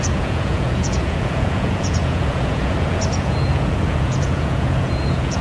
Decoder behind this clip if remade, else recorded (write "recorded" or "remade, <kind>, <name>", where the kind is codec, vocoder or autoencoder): remade, vocoder, Vocos